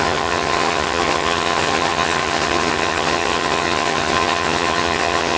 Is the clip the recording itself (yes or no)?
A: no